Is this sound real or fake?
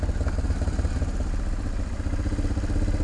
real